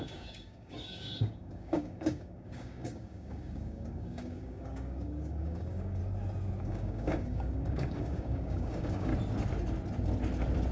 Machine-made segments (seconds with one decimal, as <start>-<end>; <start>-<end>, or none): 0.0-6.0; 6.6-9.1